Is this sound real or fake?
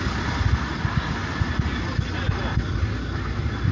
real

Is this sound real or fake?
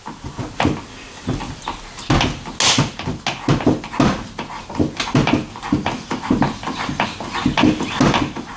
real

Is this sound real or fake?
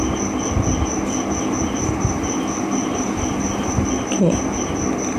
real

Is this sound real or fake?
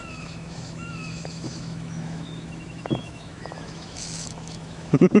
fake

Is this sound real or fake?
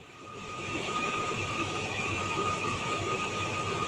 fake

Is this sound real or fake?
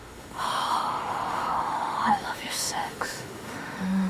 fake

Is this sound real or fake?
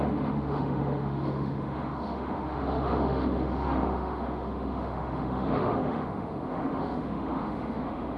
fake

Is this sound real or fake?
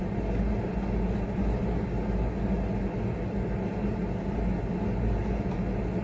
real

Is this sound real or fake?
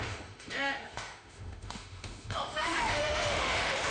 fake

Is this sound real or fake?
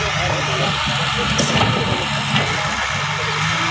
real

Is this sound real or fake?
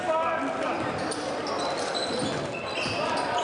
real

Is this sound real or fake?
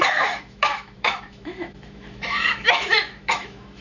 fake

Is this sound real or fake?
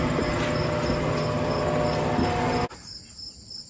real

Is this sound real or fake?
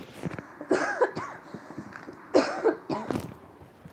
real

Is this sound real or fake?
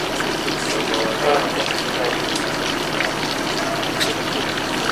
real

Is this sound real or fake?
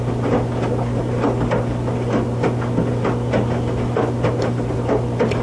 real